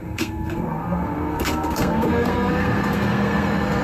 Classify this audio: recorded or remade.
remade